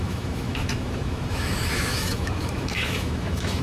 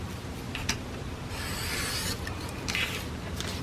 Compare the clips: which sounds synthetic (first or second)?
first